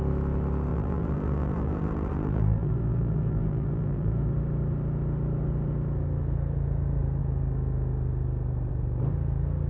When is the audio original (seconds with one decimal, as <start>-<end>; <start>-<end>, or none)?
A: 0.0-0.7; 4.3-9.7